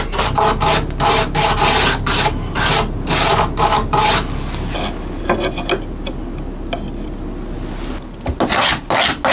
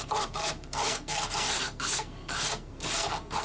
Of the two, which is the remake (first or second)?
second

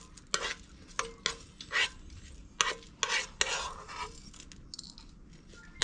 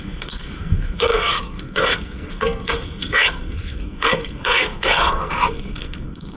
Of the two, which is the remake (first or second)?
second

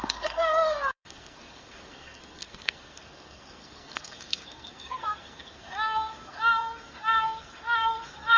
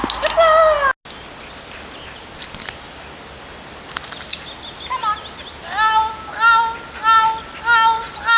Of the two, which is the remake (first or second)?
first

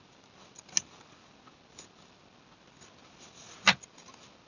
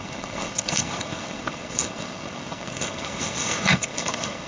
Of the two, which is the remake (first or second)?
second